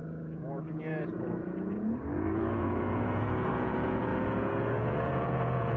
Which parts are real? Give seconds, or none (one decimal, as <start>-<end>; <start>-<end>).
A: none

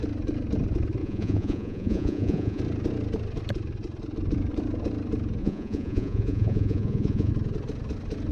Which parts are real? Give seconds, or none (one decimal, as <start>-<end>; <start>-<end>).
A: 0.0-1.0; 2.6-5.4; 7.3-8.3

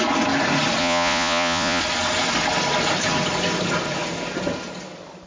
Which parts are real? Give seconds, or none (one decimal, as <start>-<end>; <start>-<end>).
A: 0.0-0.8; 1.8-5.3